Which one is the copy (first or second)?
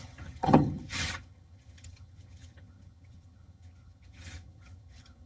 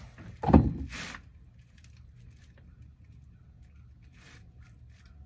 first